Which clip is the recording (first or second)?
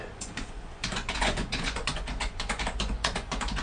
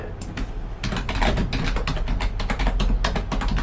second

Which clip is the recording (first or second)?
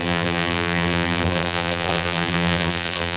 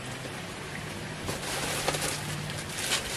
second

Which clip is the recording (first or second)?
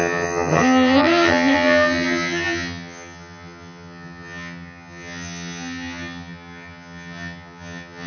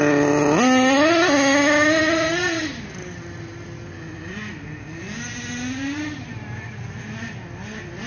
second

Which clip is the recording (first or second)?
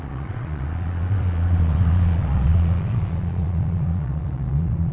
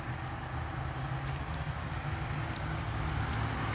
second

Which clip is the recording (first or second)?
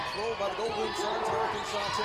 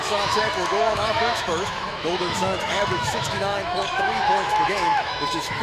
first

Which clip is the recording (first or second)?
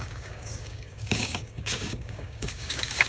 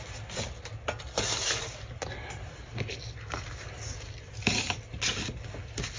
second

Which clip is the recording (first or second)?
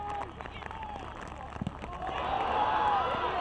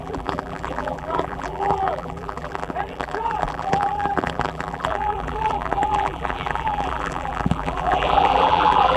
first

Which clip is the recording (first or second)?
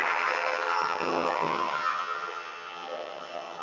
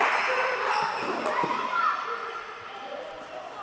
second